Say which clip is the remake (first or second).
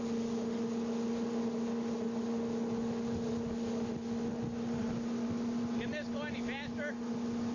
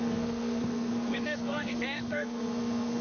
second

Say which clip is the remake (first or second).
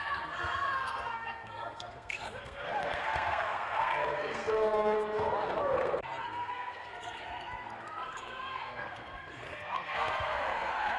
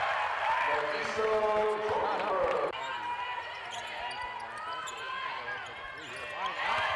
first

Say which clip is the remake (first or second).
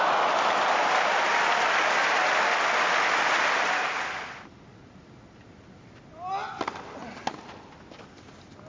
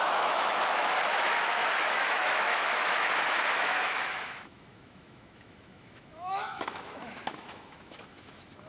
second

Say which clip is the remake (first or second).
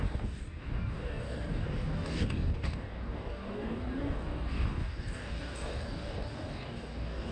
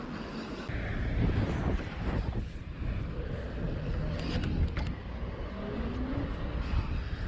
first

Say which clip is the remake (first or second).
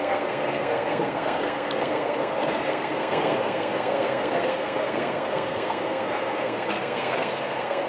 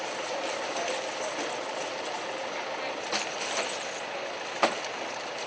first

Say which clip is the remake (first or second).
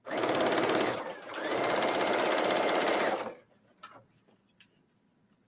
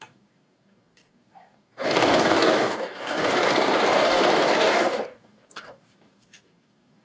second